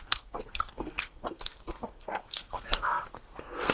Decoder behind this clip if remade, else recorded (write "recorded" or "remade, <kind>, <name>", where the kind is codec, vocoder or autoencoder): remade, codec, SNAC